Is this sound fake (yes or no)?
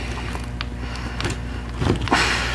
no